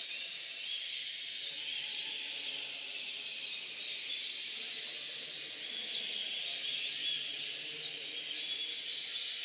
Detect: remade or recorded recorded